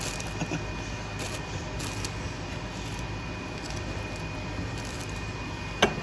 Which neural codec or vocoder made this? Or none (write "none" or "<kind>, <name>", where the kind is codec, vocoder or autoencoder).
none